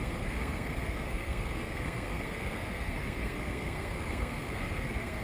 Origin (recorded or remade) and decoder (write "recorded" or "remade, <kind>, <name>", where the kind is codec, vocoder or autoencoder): remade, codec, SNAC